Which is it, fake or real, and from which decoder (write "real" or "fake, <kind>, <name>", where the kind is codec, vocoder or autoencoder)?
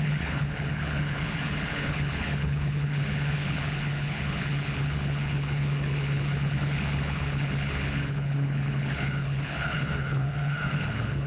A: fake, codec, HILCodec